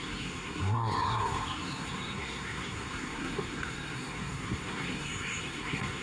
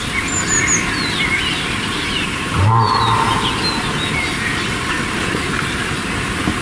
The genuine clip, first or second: second